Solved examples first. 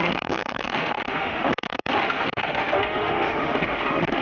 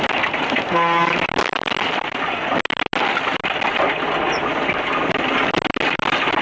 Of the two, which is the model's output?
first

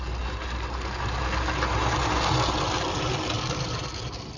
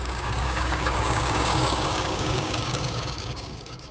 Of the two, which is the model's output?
second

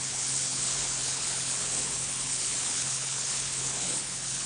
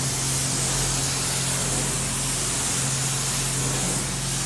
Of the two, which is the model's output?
first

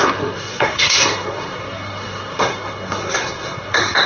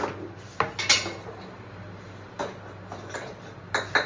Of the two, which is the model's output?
first